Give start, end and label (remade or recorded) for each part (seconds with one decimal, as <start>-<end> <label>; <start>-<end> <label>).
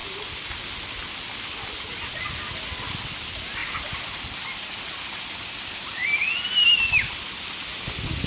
0.0-8.3 recorded